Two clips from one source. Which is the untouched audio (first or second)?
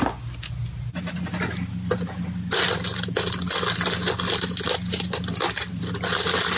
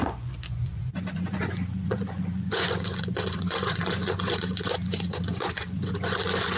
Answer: first